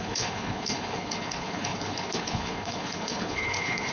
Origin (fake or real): fake